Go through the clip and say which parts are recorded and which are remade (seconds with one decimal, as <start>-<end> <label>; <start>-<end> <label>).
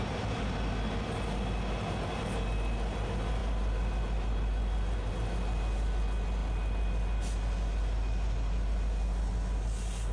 0.0-10.1 recorded